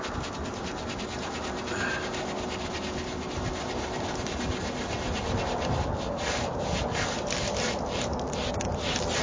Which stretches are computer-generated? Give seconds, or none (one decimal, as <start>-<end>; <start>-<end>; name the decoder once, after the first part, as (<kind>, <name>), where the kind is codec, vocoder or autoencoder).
none